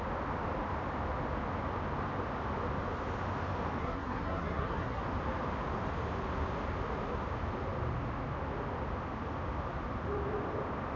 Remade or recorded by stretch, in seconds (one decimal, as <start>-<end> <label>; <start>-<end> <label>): 0.0-3.8 recorded; 3.8-5.0 remade; 5.0-11.0 recorded